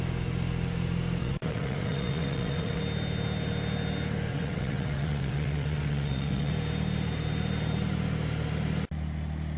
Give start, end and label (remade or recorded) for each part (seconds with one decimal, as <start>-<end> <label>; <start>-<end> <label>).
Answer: 0.0-1.2 recorded; 1.2-2.8 remade; 2.8-4.3 recorded; 4.3-6.5 remade; 6.5-9.6 recorded